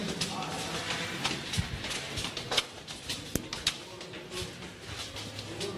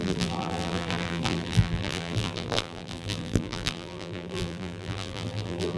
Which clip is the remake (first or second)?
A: second